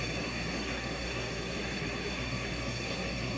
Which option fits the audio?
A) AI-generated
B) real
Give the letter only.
A